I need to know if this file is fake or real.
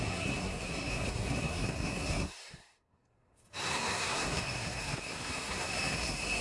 fake